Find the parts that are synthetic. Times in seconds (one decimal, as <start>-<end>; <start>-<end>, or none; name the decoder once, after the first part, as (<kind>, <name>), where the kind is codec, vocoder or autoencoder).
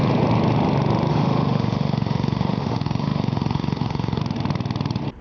1.1-4.2 (autoencoder, DAC-VAE)